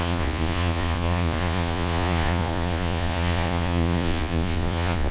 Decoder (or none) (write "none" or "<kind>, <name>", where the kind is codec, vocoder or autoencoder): vocoder, Vocos